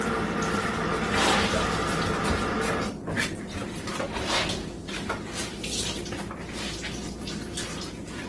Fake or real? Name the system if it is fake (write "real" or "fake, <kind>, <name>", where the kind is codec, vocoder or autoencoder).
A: real